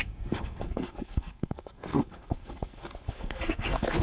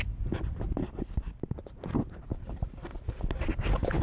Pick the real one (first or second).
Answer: second